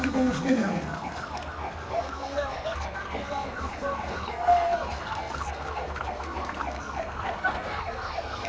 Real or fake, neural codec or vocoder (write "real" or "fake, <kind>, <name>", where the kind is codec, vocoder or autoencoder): fake, codec, SNAC